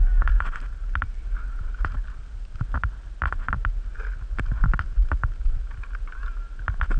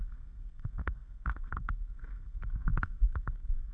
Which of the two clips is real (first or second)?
first